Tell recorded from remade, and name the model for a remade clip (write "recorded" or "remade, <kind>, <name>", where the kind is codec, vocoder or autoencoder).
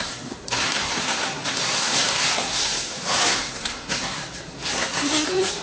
remade, codec, SNAC